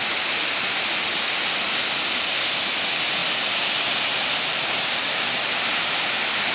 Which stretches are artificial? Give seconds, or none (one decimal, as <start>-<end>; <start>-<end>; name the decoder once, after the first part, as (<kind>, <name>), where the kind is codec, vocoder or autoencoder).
none